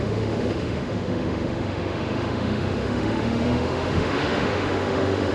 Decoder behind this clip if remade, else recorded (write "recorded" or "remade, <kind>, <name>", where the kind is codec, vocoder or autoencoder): remade, autoencoder, DAC-VAE